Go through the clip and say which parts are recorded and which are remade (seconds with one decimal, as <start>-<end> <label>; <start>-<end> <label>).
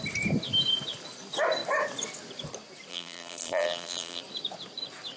0.0-2.9 recorded; 2.9-4.2 remade; 4.2-5.2 recorded